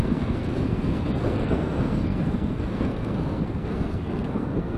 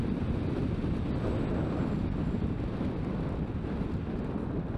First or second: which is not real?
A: first